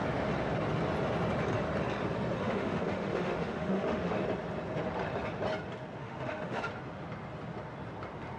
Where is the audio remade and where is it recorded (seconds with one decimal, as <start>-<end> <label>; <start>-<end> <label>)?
0.0-2.4 recorded; 2.4-4.1 remade; 4.1-6.0 recorded; 6.0-6.7 remade; 6.7-8.4 recorded